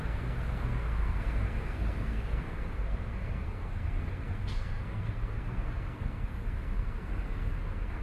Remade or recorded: remade